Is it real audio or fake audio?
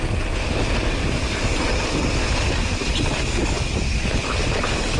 real